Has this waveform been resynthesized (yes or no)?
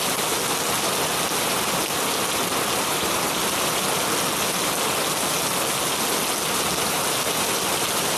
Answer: no